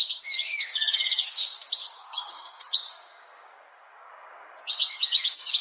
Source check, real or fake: fake